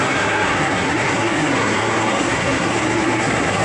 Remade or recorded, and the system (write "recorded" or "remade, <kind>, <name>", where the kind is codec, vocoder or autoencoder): remade, codec, SNAC